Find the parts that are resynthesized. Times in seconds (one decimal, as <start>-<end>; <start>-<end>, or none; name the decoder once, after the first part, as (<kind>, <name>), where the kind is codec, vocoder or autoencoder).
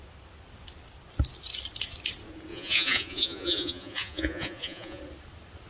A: 2.5-5.0 (vocoder, Vocos)